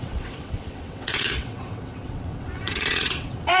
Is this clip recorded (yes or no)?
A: no